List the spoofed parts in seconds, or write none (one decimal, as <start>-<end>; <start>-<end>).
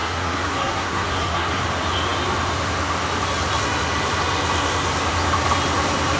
0.0-1.6